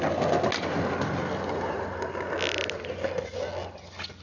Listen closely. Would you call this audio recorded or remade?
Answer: recorded